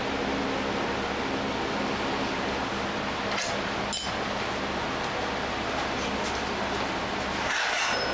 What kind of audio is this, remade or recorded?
recorded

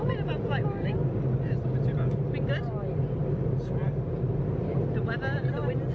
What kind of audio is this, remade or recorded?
recorded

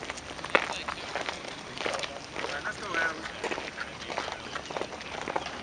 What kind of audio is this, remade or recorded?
recorded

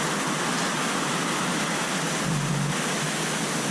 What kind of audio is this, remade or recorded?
recorded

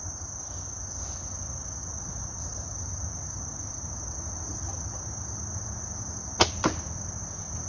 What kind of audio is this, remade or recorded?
recorded